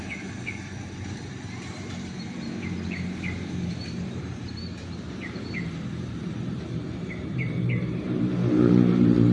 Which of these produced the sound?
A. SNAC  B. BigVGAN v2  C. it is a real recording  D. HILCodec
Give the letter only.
B